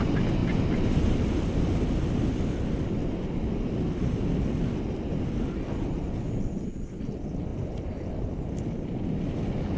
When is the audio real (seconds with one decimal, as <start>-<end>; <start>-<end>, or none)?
0.0-9.8